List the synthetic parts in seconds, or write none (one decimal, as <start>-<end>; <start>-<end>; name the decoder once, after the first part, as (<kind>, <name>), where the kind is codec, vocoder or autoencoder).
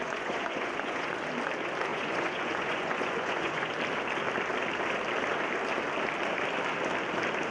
0.0-1.1 (vocoder, Vocos); 1.9-3.7